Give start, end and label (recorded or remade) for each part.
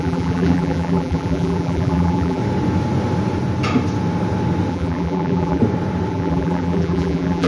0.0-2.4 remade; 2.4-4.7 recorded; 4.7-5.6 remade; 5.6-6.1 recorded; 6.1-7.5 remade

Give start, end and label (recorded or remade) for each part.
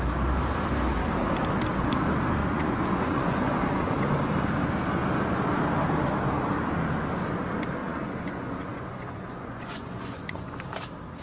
0.0-2.4 recorded; 2.4-4.1 remade; 4.1-7.8 recorded; 7.8-10.6 remade; 10.6-11.2 recorded